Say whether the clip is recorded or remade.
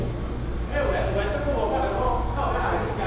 recorded